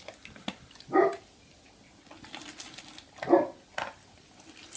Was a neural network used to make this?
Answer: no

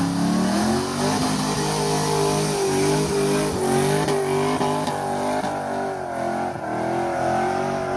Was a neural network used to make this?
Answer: no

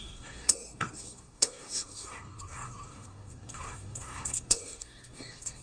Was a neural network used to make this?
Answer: yes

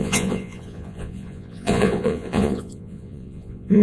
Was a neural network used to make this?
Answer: yes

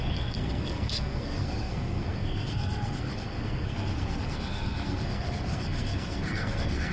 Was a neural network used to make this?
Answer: yes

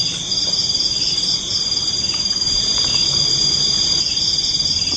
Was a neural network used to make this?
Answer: no